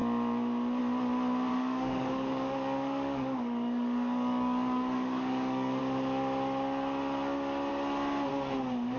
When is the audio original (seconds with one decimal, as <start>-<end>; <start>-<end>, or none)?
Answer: 0.0-1.5; 5.8-9.0